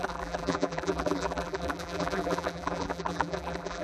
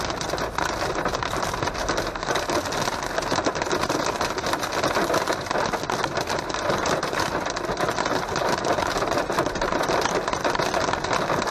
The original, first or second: second